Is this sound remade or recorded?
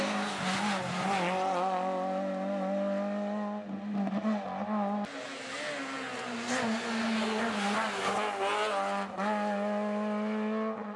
recorded